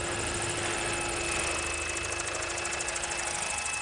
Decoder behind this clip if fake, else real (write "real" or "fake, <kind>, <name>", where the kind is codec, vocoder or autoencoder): real